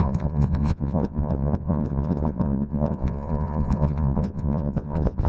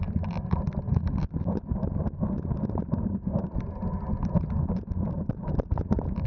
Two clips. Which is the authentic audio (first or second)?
second